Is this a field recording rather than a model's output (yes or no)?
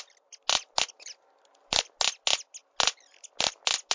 yes